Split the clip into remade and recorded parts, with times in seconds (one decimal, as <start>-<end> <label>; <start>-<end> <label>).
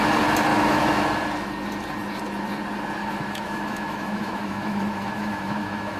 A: 0.0-0.5 recorded; 0.5-1.0 remade; 1.0-3.0 recorded; 3.0-6.0 remade